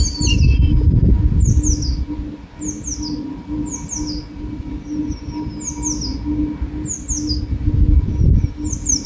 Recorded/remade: recorded